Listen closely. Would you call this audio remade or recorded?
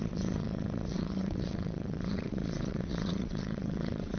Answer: remade